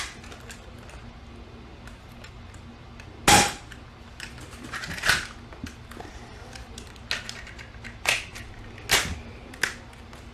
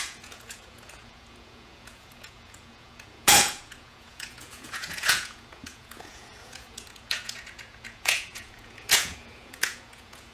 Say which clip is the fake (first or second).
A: second